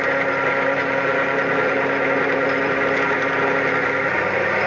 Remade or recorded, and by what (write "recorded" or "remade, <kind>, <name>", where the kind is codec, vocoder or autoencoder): remade, vocoder, BigVGAN v2